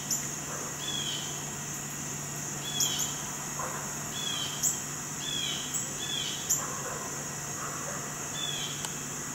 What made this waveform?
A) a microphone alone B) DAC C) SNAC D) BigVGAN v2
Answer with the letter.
A